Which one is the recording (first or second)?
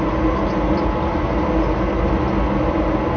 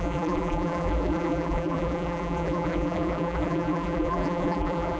first